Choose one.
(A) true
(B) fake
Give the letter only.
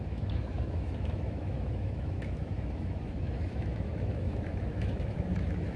B